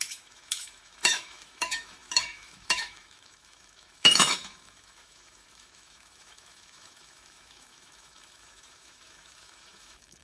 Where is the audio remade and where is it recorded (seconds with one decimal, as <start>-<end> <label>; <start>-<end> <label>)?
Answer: 0.0-10.2 remade